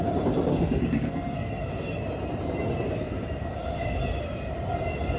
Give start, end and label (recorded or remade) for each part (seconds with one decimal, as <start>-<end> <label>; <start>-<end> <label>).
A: 0.0-0.5 recorded; 0.5-1.7 remade; 1.7-5.2 recorded